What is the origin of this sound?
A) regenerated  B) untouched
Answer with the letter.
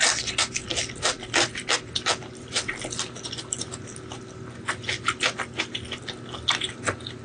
B